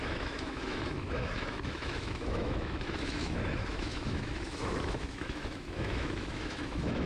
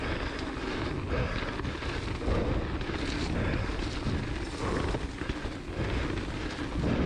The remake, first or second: first